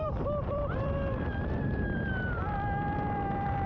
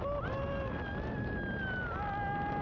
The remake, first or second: first